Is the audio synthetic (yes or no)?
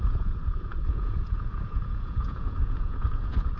yes